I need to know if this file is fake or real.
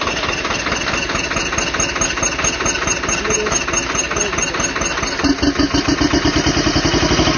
real